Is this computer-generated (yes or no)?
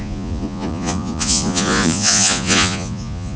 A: yes